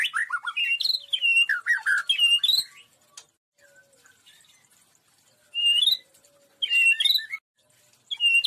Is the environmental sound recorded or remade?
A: recorded